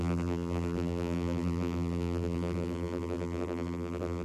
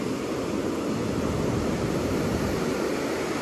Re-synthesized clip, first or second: first